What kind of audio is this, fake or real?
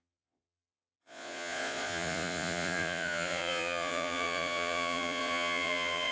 fake